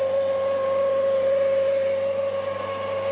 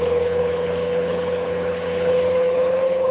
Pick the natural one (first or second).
first